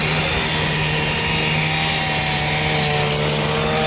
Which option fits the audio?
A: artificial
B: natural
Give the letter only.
B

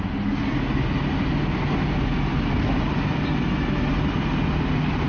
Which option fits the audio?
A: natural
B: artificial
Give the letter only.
A